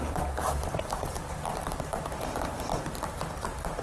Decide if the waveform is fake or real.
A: fake